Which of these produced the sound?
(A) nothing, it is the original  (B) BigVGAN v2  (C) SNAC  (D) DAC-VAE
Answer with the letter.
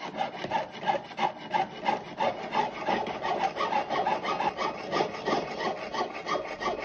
A